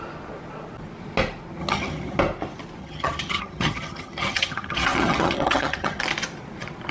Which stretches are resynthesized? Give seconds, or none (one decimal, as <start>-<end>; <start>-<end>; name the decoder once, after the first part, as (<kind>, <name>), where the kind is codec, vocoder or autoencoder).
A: 1.6-2.2 (vocoder, HiFi-GAN); 2.8-6.0